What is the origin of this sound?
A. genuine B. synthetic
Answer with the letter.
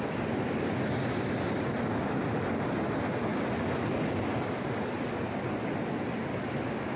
A